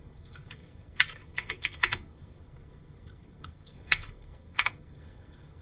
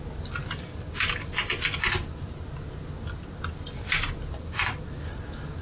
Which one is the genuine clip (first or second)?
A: second